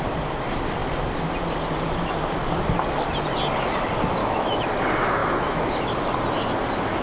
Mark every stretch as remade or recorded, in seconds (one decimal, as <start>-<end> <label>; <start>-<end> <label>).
0.0-4.2 recorded; 4.2-4.7 remade; 4.7-5.2 recorded; 5.2-5.7 remade; 5.7-7.0 recorded